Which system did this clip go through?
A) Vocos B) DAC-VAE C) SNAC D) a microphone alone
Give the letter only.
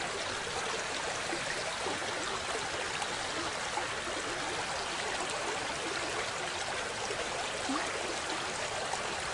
D